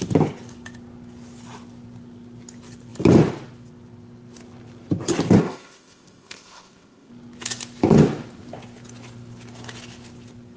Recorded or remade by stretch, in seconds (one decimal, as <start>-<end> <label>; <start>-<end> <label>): 0.0-5.4 recorded; 5.4-7.1 remade; 7.1-10.6 recorded